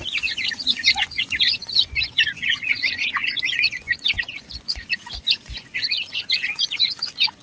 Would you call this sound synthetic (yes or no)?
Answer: yes